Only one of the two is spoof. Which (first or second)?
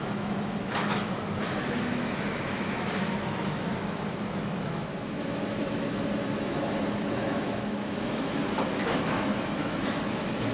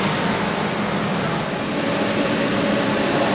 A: first